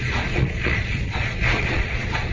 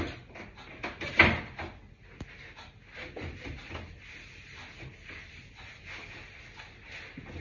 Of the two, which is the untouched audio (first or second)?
second